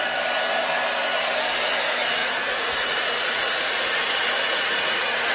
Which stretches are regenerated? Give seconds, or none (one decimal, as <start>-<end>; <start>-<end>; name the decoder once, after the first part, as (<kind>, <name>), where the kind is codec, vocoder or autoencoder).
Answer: 2.2-5.3 (vocoder, Vocos)